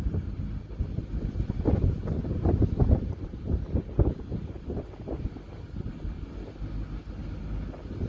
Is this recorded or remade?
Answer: recorded